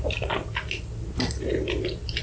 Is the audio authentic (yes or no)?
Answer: yes